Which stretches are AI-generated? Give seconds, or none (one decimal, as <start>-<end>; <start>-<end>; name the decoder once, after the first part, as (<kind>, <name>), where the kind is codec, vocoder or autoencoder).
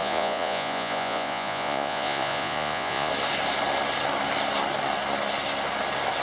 0.0-3.1 (vocoder, Vocos)